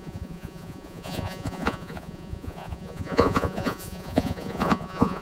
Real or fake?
fake